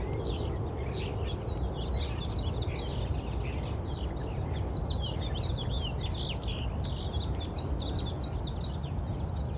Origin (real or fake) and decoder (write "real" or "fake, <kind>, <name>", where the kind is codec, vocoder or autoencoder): real